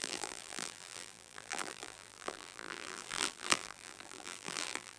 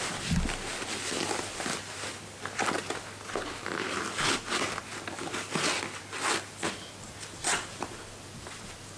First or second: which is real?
second